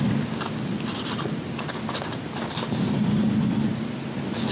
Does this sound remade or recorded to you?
recorded